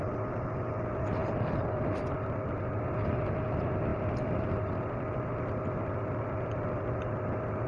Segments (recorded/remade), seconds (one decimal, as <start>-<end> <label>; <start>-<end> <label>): 0.0-1.2 recorded; 1.2-2.6 remade; 2.6-3.9 recorded; 3.9-5.9 remade; 5.9-7.7 recorded